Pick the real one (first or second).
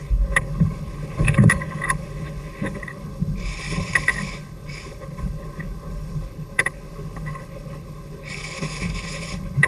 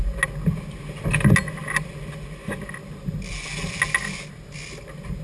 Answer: second